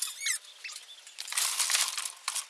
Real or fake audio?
real